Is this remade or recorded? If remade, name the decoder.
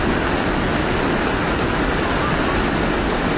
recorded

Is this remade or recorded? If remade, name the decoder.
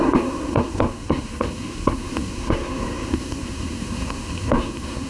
remade, codec, SNAC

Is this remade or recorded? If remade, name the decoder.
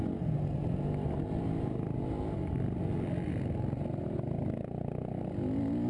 recorded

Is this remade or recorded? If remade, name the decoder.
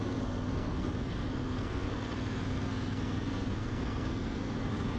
remade, codec, SNAC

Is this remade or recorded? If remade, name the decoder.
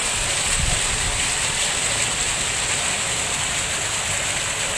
recorded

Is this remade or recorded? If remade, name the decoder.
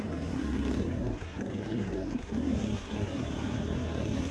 remade, codec, SNAC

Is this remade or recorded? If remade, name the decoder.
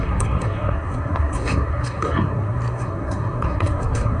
remade, codec, SNAC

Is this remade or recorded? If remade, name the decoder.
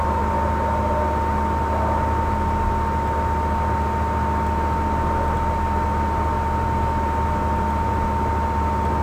recorded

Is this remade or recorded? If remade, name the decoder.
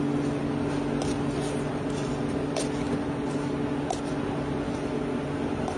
recorded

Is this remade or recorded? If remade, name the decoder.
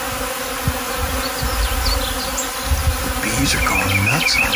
recorded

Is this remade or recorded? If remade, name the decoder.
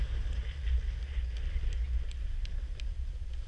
recorded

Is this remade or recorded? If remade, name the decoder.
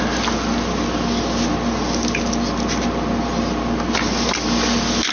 recorded